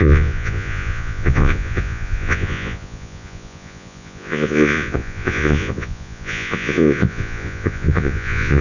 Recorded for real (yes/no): no